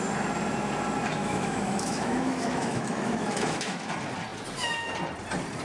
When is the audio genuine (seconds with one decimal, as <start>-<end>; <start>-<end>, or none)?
0.0-1.2; 3.9-5.6